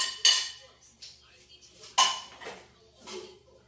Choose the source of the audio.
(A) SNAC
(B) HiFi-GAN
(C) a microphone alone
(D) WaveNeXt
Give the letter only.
C